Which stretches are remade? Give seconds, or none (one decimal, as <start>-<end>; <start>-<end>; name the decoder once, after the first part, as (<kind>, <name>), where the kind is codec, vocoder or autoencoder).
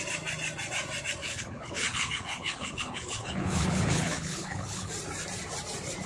1.2-4.9 (codec, HILCodec)